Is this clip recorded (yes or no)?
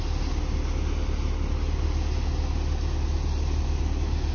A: yes